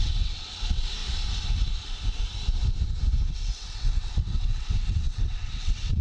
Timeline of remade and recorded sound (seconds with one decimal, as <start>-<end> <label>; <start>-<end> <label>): 0.0-1.0 remade; 1.0-3.3 recorded; 3.3-6.0 remade

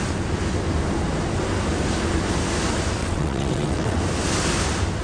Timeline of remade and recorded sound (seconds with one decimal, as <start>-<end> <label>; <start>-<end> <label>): 0.0-3.0 recorded; 3.0-4.0 remade; 4.0-5.0 recorded

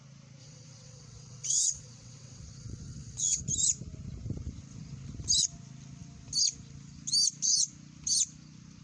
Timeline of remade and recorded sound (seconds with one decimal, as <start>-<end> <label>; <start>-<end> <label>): 0.0-0.4 recorded; 0.4-3.4 remade; 3.4-8.8 recorded

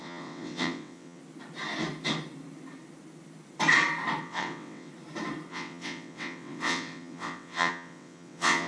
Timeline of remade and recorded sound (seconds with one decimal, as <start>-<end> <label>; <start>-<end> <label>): 0.0-1.2 remade; 1.2-4.2 recorded; 4.2-4.9 remade; 4.9-5.5 recorded; 5.5-8.7 remade

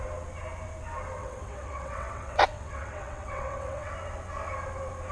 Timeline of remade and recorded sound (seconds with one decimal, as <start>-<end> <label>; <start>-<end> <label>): 0.0-1.2 recorded; 1.2-3.9 remade; 3.9-5.1 recorded